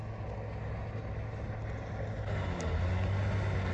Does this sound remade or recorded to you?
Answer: recorded